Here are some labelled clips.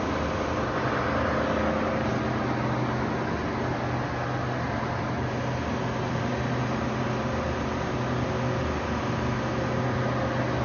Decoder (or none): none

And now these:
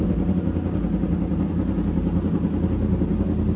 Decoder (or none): none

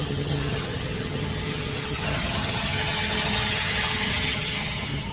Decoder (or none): vocoder, HiFi-GAN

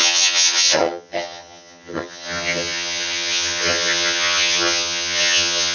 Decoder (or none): vocoder, HiFi-GAN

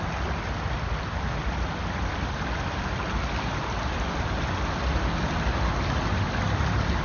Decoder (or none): none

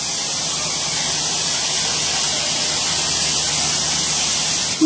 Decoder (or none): none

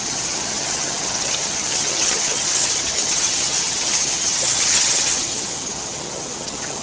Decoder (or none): vocoder, HiFi-GAN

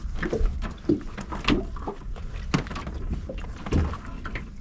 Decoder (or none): none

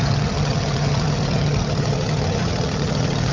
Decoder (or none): vocoder, HiFi-GAN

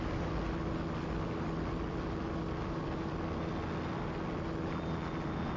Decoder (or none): none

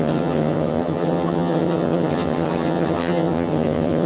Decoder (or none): vocoder, HiFi-GAN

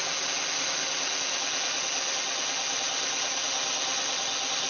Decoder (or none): none